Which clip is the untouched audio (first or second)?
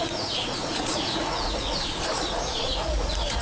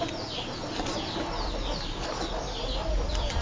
second